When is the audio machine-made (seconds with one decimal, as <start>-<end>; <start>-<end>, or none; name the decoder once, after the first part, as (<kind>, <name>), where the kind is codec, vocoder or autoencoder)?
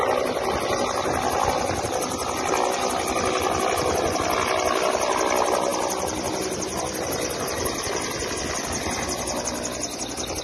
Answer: none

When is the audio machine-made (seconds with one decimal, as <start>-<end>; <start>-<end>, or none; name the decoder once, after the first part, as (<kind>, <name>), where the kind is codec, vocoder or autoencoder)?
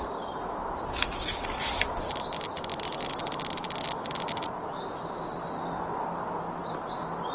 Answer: none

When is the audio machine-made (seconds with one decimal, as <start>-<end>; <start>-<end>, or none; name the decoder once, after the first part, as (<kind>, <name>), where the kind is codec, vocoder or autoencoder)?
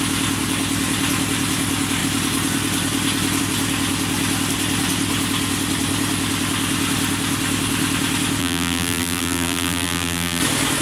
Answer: 8.4-10.4 (vocoder, BigVGAN v2)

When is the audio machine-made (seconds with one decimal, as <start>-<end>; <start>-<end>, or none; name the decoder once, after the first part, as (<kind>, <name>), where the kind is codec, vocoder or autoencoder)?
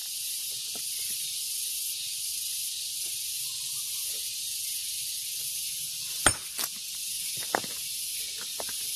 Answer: none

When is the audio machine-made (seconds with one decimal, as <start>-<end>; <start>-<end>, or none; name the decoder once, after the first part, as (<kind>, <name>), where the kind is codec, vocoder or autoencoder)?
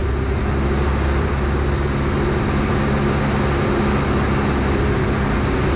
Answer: 0.0-1.3 (vocoder, BigVGAN v2)